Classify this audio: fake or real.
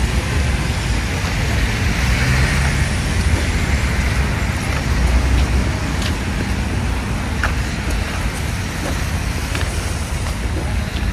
real